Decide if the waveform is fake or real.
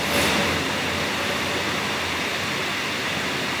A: real